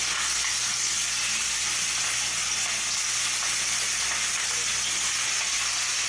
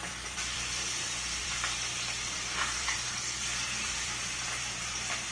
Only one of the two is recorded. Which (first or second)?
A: first